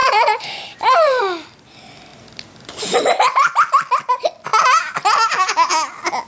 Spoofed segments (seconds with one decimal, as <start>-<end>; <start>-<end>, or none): 0.0-1.2